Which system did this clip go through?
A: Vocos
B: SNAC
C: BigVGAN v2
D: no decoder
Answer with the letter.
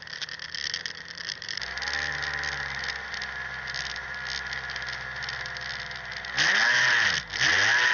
D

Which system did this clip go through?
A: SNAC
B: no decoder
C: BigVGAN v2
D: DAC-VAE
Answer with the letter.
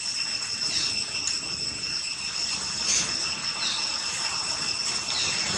B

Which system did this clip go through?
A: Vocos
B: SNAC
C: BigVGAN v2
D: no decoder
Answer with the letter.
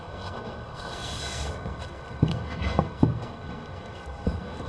B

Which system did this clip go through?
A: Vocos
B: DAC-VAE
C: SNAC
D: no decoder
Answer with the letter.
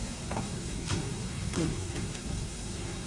C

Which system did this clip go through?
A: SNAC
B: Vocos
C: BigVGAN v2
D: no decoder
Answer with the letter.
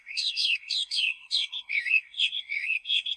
A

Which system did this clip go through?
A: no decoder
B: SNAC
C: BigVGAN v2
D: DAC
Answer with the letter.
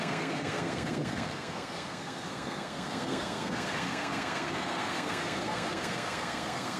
B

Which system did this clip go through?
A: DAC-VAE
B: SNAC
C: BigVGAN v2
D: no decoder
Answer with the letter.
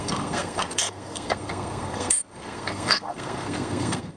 B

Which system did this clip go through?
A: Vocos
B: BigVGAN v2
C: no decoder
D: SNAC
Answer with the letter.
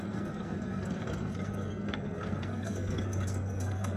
D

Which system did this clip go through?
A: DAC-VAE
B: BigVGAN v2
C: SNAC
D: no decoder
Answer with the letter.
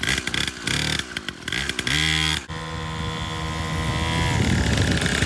D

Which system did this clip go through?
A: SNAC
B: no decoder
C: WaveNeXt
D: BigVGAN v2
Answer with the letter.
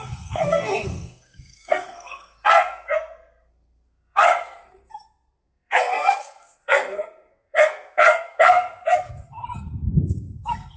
A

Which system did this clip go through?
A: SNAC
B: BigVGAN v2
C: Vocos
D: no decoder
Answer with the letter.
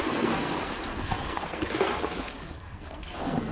A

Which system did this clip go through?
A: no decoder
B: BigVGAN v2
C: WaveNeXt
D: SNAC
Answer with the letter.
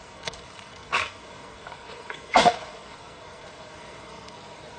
D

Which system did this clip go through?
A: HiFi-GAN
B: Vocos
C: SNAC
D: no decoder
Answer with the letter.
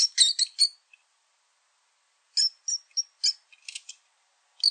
D